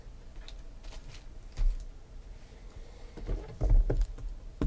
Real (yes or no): yes